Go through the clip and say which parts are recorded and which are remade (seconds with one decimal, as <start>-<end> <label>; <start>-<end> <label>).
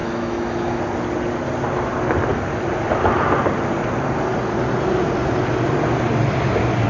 0.0-0.8 remade; 0.8-6.9 recorded